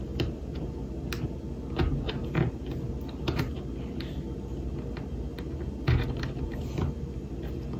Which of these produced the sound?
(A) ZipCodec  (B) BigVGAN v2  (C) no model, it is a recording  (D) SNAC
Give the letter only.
C